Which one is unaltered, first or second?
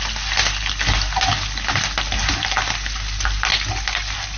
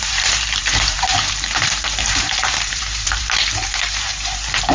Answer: first